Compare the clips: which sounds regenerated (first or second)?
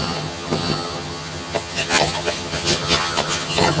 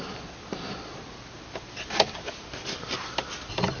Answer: first